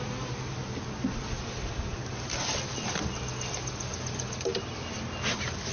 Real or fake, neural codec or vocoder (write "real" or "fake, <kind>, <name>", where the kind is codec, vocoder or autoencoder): real